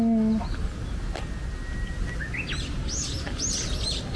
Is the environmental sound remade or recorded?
recorded